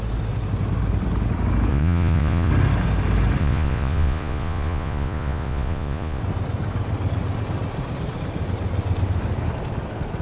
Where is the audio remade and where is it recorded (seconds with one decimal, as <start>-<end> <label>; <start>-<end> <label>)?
0.0-1.7 recorded; 1.7-2.5 remade; 2.5-3.4 recorded; 3.4-6.2 remade; 6.2-10.2 recorded